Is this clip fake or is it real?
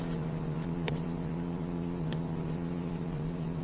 fake